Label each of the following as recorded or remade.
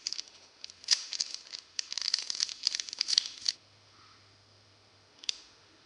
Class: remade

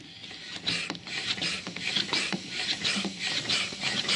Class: recorded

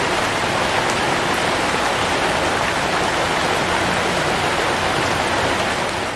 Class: recorded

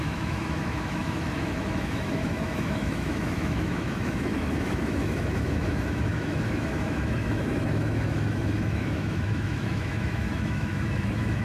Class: remade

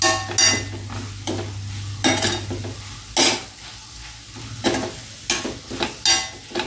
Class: recorded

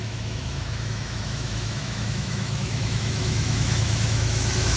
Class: remade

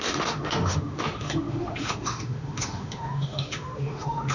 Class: remade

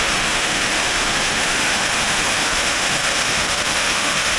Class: remade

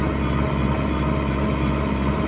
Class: recorded